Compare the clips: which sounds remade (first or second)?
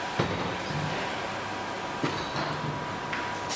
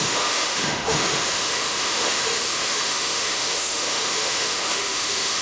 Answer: second